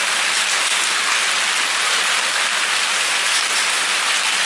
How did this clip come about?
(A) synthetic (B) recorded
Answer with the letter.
B